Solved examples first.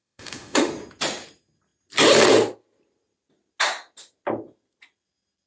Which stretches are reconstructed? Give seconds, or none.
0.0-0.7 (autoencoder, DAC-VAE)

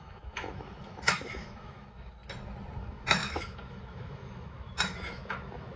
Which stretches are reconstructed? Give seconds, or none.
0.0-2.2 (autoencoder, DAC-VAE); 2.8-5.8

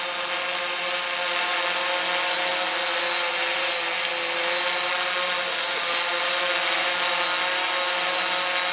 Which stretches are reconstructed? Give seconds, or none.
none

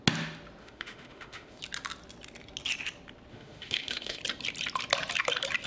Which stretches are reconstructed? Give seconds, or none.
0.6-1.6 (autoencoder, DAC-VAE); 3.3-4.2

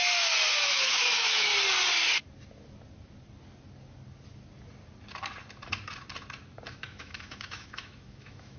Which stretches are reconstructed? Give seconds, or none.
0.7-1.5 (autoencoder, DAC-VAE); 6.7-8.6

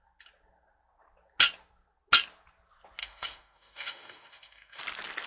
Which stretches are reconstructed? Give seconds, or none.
3.0-4.8 (autoencoder, DAC-VAE)

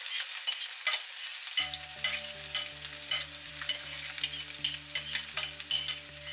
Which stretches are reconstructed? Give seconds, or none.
none

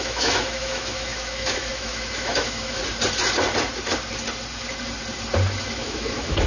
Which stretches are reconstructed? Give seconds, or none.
0.0-2.8 (autoencoder, DAC-VAE); 5.6-6.5